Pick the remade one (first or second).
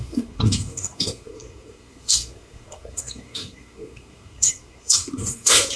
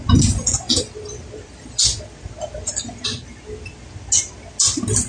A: first